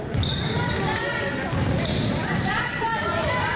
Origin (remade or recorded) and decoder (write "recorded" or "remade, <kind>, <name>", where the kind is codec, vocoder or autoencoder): recorded